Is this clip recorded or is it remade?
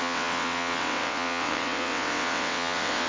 remade